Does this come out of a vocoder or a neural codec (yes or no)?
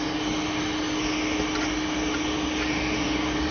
no